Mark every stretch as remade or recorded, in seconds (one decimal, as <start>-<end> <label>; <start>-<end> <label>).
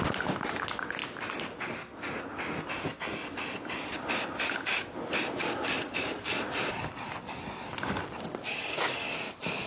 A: 0.0-9.7 recorded